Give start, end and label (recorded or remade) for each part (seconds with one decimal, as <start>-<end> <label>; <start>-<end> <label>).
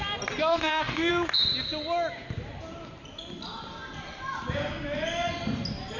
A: 0.0-0.5 recorded; 0.5-1.1 remade; 1.1-6.0 recorded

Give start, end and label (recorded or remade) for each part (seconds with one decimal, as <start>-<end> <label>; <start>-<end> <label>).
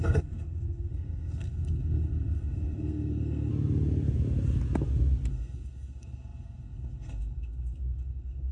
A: 0.0-3.5 remade; 3.5-5.3 recorded; 5.3-8.5 remade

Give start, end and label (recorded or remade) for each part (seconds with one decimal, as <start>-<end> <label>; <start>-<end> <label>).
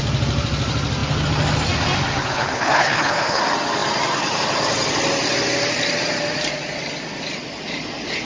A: 0.0-2.2 recorded; 2.2-3.4 remade; 3.4-8.2 recorded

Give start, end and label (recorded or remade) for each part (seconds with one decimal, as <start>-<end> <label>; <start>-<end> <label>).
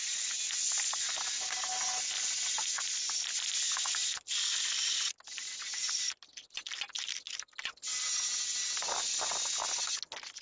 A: 0.0-10.4 recorded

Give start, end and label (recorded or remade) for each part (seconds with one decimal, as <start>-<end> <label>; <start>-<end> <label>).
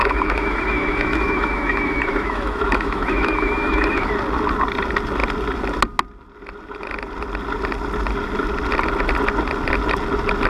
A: 0.0-4.1 remade; 4.1-10.5 recorded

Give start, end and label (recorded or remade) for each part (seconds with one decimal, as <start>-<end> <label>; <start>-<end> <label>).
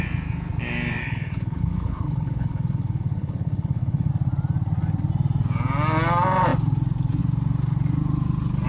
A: 0.0-1.0 recorded; 1.0-4.1 remade; 4.1-8.7 recorded